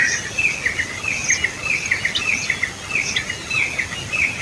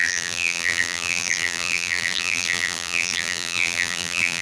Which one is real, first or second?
first